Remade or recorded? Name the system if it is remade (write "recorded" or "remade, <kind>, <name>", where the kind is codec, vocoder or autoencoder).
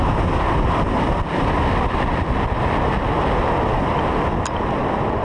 recorded